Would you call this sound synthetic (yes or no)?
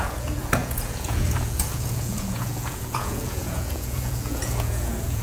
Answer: yes